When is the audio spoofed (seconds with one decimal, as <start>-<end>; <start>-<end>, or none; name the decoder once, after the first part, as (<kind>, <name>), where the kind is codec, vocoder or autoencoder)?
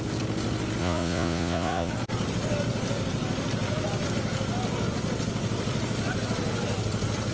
0.8-1.9 (vocoder, Vocos)